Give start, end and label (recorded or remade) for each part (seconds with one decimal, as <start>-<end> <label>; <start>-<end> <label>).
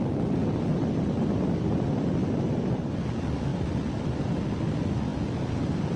0.0-3.5 recorded; 3.5-4.3 remade; 4.3-6.0 recorded